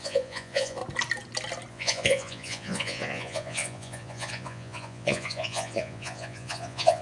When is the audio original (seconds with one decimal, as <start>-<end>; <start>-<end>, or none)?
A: 0.8-1.7